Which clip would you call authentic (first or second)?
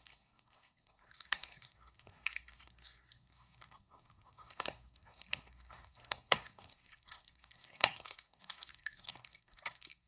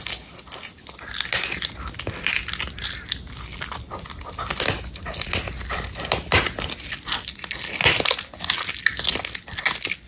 second